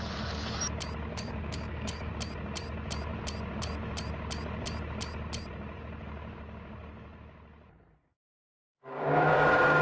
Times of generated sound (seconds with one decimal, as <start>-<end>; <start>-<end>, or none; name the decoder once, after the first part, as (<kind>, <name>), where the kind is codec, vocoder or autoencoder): 1.1-2.1 (codec, DAC); 8.0-9.8